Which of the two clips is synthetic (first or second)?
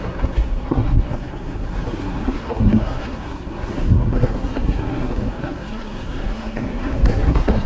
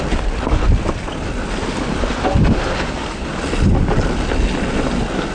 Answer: first